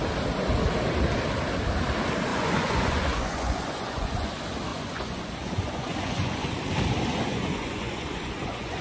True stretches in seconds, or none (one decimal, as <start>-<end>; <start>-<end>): 0.0-2.3; 4.3-4.7; 6.5-7.1